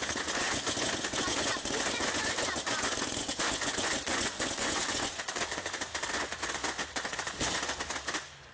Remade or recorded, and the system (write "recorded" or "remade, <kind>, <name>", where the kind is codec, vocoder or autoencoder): remade, vocoder, Vocos